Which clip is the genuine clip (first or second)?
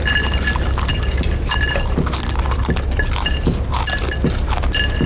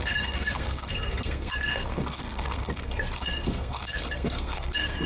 first